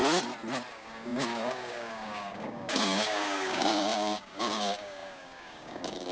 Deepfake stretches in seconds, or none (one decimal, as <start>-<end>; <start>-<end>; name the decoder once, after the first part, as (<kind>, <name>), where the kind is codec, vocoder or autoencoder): 0.7-6.1 (codec, DAC)